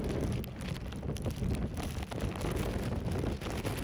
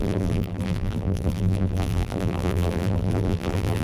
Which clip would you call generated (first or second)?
second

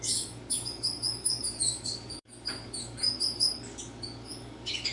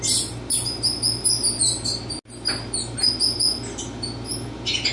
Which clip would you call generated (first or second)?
first